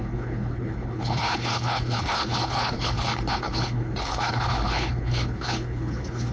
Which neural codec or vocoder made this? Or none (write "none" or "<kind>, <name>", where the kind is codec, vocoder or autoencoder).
codec, HILCodec